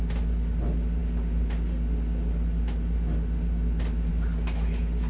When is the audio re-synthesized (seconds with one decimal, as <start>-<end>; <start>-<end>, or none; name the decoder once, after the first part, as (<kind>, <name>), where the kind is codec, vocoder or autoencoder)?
none